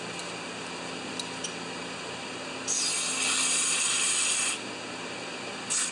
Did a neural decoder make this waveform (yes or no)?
no